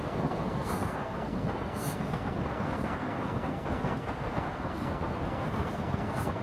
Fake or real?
fake